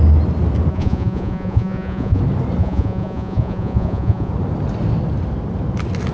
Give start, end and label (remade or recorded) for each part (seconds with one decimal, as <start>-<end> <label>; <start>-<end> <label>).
0.0-0.7 recorded; 0.7-2.2 remade; 2.2-2.6 recorded; 2.6-4.3 remade; 4.3-6.1 recorded